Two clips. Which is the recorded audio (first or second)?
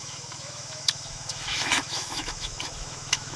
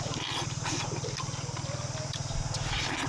second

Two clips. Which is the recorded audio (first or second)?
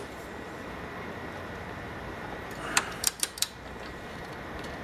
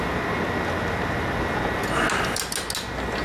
second